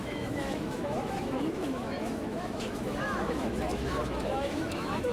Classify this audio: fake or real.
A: fake